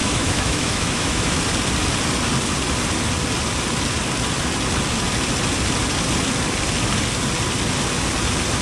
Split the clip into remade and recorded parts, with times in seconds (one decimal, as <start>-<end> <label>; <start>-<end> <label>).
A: 0.0-1.4 remade; 1.4-8.6 recorded